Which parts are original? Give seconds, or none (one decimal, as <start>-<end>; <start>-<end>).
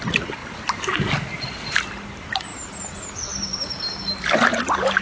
0.0-0.4; 1.8-2.5; 3.1-3.5; 4.3-5.0